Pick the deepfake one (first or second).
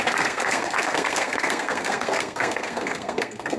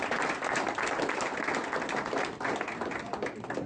first